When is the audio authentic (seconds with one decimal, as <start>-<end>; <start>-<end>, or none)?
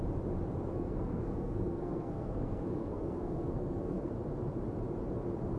0.0-0.7; 4.1-5.6